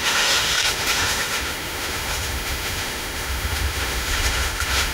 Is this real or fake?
fake